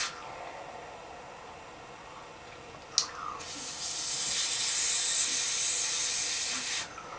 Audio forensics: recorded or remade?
recorded